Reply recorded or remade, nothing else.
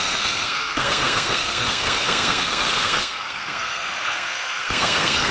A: remade